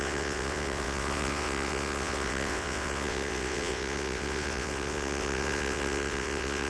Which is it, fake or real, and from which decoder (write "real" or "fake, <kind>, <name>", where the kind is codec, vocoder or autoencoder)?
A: fake, vocoder, WaveNeXt